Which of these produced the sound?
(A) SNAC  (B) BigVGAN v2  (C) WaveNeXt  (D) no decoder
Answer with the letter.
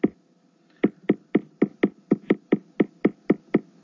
D